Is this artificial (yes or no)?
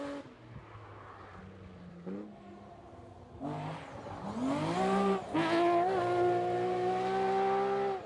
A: no